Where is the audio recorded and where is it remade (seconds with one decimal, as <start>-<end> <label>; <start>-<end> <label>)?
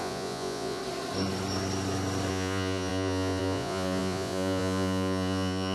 0.0-0.8 remade; 0.8-2.3 recorded; 2.3-5.7 remade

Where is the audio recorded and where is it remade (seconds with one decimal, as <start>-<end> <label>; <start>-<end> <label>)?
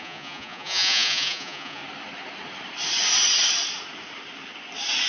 0.0-1.8 remade; 1.8-5.1 recorded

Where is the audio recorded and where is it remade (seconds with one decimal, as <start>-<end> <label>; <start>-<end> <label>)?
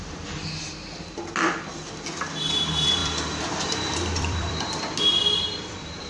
0.0-1.7 remade; 1.7-2.4 recorded; 2.4-6.1 remade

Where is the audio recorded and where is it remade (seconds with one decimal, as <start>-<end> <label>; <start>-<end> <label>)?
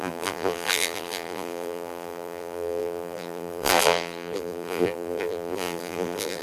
0.0-6.4 remade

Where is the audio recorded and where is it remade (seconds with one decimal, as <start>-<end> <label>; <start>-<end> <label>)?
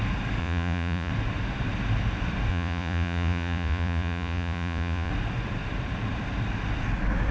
0.0-0.4 recorded; 0.4-1.1 remade; 1.1-2.5 recorded; 2.5-5.1 remade; 5.1-7.3 recorded